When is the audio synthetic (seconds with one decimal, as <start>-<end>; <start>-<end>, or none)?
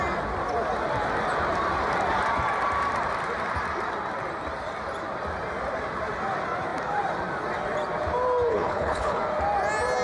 8.5-9.2